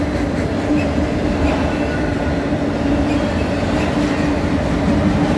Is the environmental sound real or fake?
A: real